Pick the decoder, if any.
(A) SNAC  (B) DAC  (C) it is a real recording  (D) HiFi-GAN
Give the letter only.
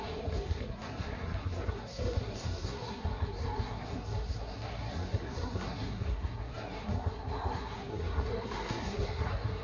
A